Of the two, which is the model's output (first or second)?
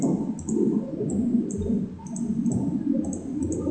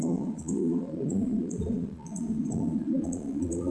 second